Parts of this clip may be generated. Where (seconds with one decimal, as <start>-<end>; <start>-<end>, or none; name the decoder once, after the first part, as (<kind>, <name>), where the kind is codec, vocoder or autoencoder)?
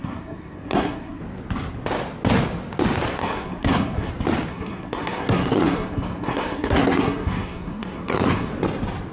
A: 0.0-1.2 (codec, SNAC); 3.2-4.1; 4.5-8.5